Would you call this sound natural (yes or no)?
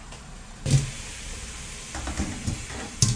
yes